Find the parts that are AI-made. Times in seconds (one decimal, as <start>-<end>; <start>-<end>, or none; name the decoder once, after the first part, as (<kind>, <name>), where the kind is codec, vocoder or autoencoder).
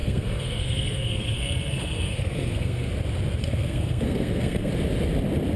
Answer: 0.0-2.9 (codec, SNAC); 3.4-4.7